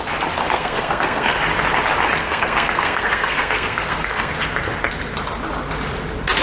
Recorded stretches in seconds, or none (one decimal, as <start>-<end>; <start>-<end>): 0.0-0.4; 1.4-2.2; 4.3-6.4